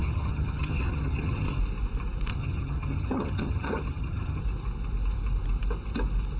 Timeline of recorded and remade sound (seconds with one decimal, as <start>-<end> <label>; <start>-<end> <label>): 0.0-1.6 remade; 1.6-2.3 recorded; 2.3-4.4 remade; 4.4-6.4 recorded